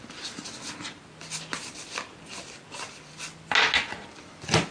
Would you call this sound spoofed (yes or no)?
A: no